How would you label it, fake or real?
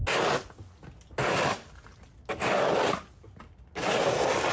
real